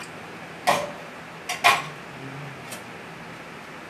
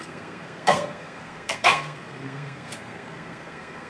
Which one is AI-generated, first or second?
second